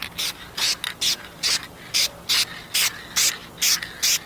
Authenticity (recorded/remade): recorded